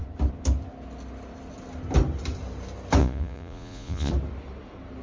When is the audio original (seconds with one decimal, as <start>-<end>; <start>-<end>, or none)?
0.0-3.0; 4.1-5.0